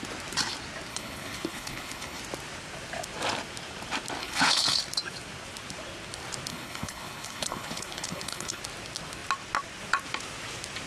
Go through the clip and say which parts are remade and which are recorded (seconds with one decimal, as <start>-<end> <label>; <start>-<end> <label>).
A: 0.0-0.9 recorded; 0.9-2.2 remade; 2.2-4.2 recorded; 4.2-4.8 remade; 4.8-6.5 recorded; 6.5-8.6 remade; 8.6-10.9 recorded